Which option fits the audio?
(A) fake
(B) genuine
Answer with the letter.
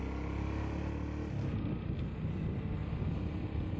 B